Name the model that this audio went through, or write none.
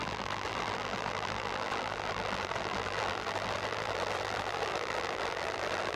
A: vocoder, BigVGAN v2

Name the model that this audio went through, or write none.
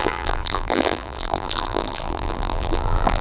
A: vocoder, BigVGAN v2